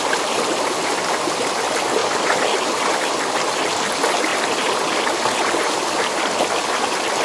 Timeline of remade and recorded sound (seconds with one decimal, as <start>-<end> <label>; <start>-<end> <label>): 0.0-2.0 recorded; 2.0-2.9 remade; 2.9-7.2 recorded